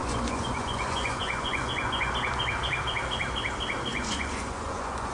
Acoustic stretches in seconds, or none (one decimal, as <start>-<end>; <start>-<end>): 2.1-3.9

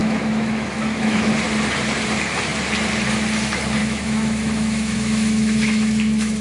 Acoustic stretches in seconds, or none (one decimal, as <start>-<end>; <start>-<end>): 1.3-3.8

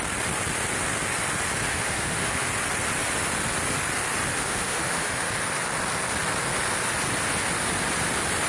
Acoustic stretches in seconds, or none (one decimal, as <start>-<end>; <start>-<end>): 0.0-1.7; 2.5-4.3; 5.3-8.5